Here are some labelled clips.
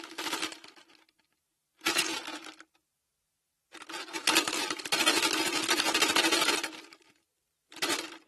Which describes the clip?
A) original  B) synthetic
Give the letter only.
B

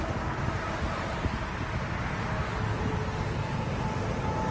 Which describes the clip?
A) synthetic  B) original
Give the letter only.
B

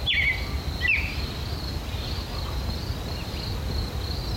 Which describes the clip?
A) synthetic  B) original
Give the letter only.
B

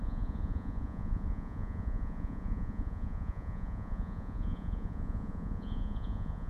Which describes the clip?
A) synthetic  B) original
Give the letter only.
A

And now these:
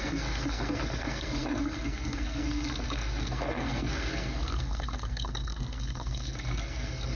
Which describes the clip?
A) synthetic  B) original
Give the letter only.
A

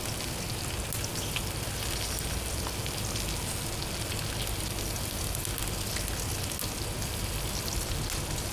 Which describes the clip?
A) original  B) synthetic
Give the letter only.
A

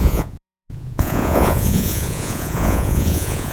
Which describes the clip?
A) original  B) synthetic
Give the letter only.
B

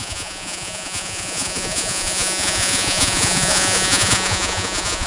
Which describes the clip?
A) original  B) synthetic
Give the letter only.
B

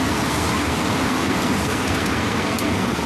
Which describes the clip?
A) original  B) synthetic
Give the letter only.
B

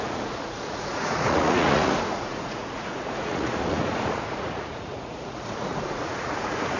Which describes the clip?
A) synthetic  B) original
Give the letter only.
A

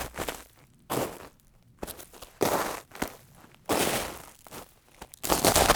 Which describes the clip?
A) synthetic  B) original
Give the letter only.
B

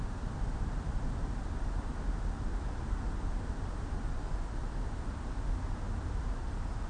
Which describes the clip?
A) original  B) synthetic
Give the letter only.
A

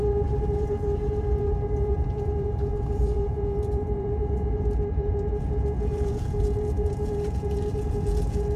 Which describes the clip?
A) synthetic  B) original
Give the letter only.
A